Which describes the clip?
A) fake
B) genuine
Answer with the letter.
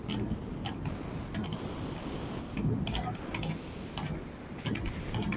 B